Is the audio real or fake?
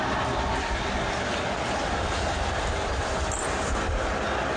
real